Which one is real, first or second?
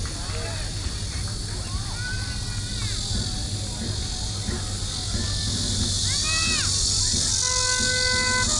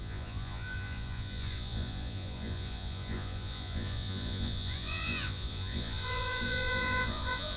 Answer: first